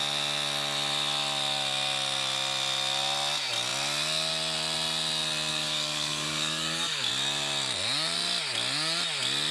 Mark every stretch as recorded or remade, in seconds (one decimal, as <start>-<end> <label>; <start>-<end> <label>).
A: 0.0-5.5 recorded; 5.5-7.1 remade; 7.1-9.5 recorded